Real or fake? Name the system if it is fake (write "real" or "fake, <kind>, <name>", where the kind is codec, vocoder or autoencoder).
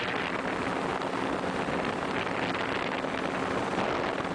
real